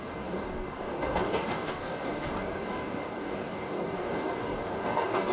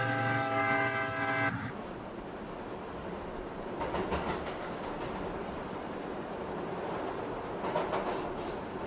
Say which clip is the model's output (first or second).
first